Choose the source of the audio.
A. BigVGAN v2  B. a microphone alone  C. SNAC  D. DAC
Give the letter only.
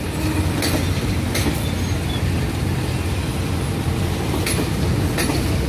B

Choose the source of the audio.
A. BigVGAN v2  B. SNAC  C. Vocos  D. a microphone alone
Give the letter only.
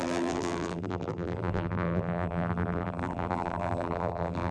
A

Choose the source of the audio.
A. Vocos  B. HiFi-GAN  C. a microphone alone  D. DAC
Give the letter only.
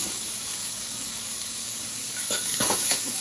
D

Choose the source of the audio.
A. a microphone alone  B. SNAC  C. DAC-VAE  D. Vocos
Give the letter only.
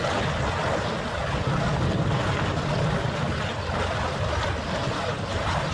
A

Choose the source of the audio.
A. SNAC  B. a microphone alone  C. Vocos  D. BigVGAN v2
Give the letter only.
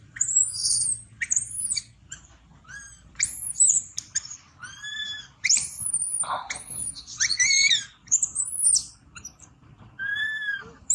D